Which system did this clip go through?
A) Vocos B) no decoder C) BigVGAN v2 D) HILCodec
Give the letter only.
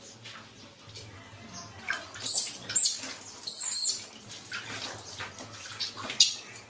B